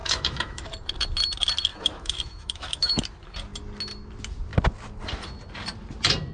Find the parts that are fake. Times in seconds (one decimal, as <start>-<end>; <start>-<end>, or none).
0.0-0.7; 1.7-3.0